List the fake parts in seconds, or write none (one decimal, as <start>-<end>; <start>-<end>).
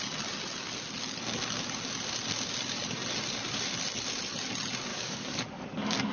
4.9-5.6